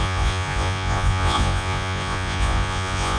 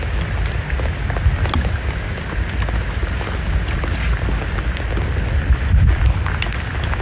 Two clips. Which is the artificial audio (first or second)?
first